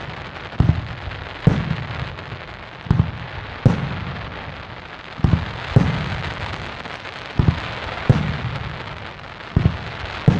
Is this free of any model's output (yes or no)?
yes